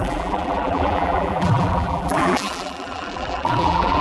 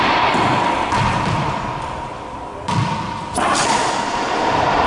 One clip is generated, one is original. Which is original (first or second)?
second